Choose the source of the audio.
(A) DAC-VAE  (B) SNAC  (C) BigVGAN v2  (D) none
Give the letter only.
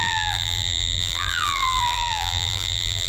C